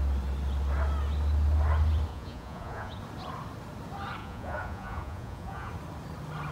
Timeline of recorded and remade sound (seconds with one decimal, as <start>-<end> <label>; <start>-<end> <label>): 0.0-2.1 recorded; 2.1-3.0 remade; 3.0-4.2 recorded; 4.2-5.7 remade; 5.7-6.5 recorded